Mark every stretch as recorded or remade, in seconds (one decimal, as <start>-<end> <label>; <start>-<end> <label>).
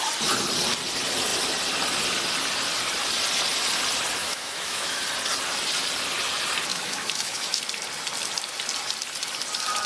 0.0-4.2 recorded; 4.2-5.0 remade; 5.0-6.7 recorded; 6.7-7.6 remade; 7.6-9.9 recorded